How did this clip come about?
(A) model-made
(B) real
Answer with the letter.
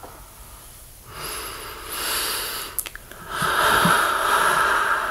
B